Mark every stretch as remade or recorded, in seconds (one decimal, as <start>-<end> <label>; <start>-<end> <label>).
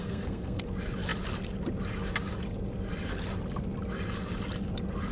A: 0.0-0.6 remade; 0.6-5.1 recorded